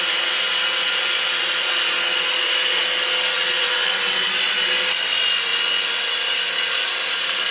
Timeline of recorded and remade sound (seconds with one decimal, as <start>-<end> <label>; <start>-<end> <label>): 0.0-3.3 recorded; 3.3-4.7 remade; 4.7-7.5 recorded